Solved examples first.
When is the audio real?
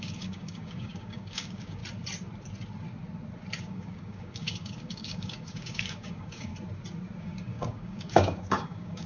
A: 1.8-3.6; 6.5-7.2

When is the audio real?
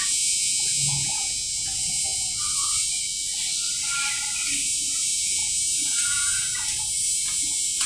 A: 0.0-7.9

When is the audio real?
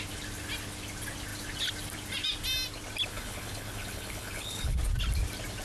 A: 0.0-3.1; 4.8-5.6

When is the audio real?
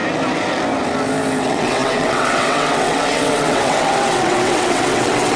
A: 0.0-1.4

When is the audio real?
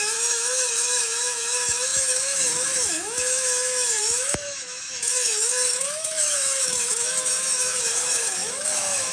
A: none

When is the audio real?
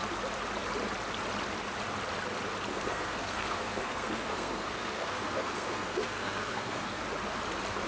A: 0.0-2.7; 7.0-7.9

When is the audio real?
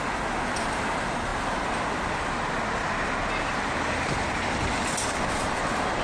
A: 0.0-6.0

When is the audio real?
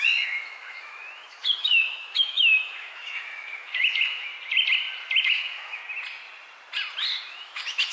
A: 4.3-5.2; 5.8-7.3